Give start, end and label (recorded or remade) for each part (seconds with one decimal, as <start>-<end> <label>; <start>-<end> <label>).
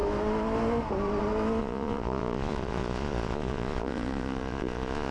0.0-1.6 recorded; 1.6-5.1 remade